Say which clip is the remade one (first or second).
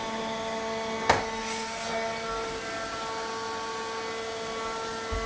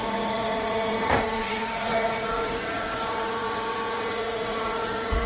second